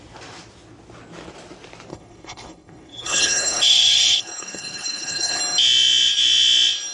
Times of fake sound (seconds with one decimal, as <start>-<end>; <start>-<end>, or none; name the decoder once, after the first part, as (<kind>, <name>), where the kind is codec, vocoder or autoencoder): 1.9-5.4 (codec, HILCodec)